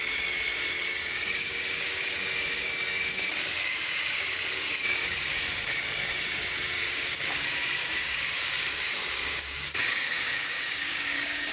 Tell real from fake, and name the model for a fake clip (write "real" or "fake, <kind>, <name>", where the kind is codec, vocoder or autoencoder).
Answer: fake, codec, DAC